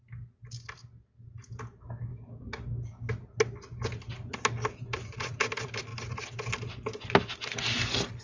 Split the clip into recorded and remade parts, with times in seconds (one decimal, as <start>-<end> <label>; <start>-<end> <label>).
0.0-2.1 recorded; 2.1-3.1 remade; 3.1-8.2 recorded